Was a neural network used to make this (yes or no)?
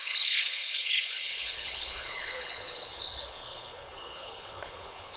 yes